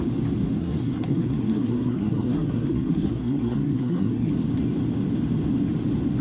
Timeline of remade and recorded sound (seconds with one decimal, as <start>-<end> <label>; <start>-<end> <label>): 0.0-0.6 recorded; 0.6-4.3 remade; 4.3-6.2 recorded